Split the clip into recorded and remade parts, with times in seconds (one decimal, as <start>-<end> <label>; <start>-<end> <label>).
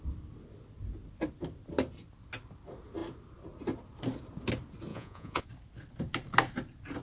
0.0-4.9 recorded; 4.9-5.5 remade; 5.5-7.0 recorded